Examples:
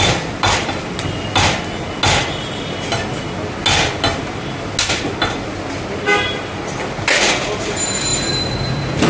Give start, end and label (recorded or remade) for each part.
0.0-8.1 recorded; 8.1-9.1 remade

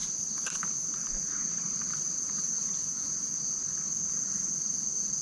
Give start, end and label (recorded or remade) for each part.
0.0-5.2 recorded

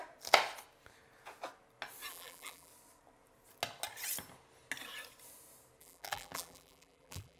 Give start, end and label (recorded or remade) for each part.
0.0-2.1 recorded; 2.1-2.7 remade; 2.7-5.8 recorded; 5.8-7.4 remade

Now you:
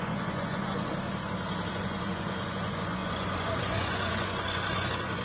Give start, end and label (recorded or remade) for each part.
0.0-0.9 remade; 0.9-1.7 recorded; 1.7-5.2 remade

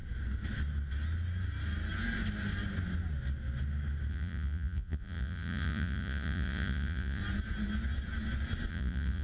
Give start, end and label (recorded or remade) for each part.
0.0-4.1 recorded; 4.1-7.2 remade; 7.2-8.7 recorded; 8.7-9.2 remade

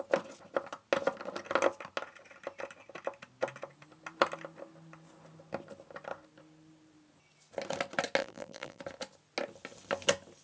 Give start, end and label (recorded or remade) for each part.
0.0-8.2 recorded; 8.2-8.8 remade; 8.8-10.4 recorded